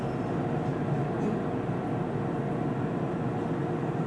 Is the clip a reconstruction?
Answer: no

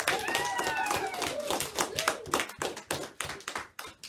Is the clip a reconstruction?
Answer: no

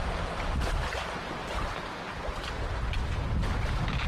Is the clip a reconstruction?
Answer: no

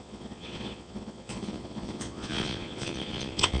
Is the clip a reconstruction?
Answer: yes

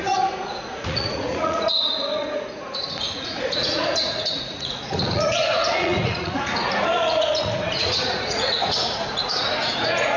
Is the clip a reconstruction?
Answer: yes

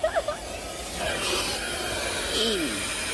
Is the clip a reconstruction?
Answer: no